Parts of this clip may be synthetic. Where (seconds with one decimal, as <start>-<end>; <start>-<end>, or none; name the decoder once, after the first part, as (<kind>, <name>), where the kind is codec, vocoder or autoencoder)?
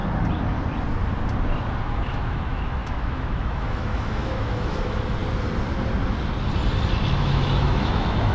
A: 1.9-5.2 (autoencoder, DAC-VAE); 7.2-8.3